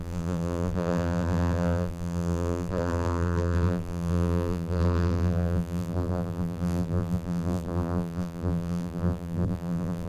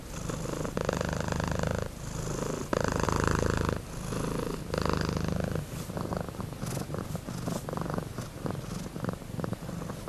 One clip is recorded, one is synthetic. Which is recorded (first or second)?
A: second